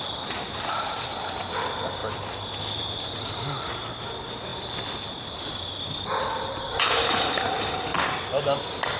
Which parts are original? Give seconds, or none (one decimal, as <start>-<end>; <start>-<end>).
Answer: 0.0-9.0